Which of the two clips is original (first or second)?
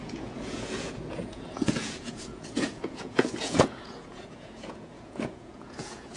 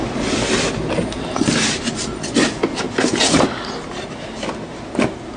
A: second